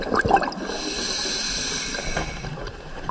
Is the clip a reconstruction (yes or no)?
no